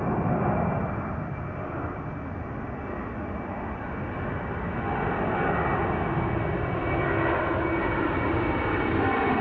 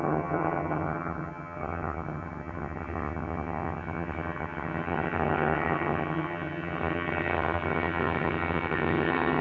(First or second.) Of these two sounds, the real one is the first